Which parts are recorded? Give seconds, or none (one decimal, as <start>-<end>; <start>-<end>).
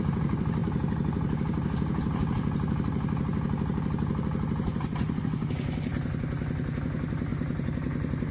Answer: 0.0-7.3